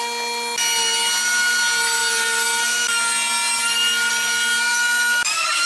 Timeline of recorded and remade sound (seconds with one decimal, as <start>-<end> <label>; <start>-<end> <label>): 0.0-5.7 recorded